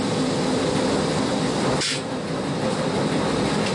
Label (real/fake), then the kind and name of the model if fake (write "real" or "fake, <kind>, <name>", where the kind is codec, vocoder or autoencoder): real